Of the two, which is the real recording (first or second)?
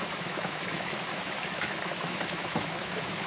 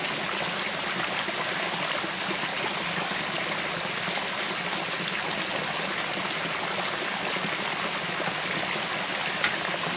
second